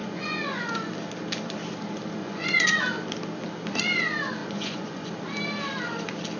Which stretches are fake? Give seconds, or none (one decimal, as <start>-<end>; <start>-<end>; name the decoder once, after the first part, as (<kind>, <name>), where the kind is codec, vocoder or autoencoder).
0.0-0.9 (vocoder, Vocos); 2.2-2.8; 4.4-5.1